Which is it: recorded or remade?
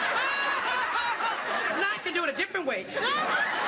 recorded